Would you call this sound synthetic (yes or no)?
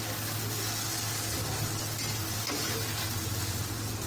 no